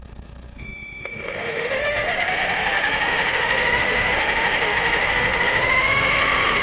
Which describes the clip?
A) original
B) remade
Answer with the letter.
B